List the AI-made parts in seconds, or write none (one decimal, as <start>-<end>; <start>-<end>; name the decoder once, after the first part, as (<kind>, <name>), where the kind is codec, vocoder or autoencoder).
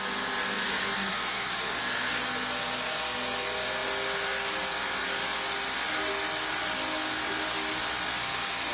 1.1-1.8 (codec, DAC)